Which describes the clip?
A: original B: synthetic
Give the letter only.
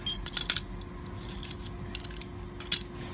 A